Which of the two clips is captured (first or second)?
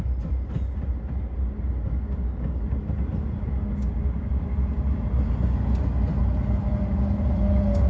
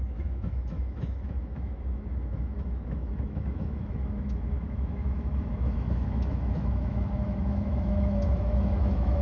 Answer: first